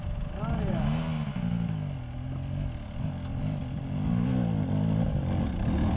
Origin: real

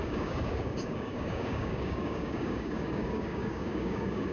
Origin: fake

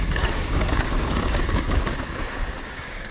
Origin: fake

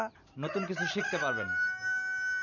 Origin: real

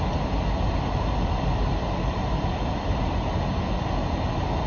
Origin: real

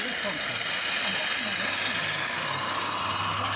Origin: real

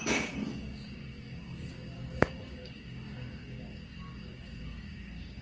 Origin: fake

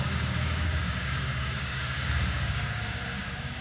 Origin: fake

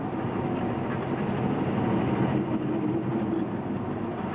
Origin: real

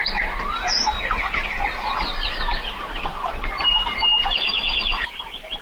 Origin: real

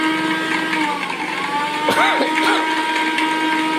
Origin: real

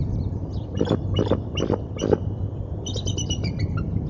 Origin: real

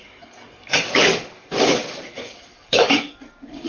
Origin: fake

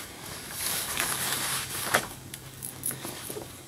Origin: fake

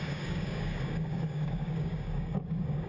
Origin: fake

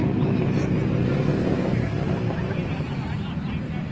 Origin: real